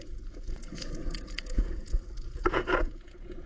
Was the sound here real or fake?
fake